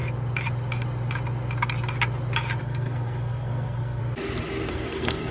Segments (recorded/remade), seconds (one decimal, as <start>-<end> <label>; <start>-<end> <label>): 0.0-2.6 recorded; 2.6-4.0 remade; 4.0-4.7 recorded; 4.7-5.3 remade